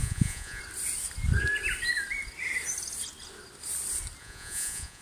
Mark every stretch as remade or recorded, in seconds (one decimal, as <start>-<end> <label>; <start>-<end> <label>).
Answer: 0.0-0.6 remade; 0.6-4.2 recorded; 4.2-5.0 remade